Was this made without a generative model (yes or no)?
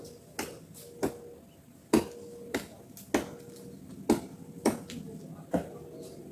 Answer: yes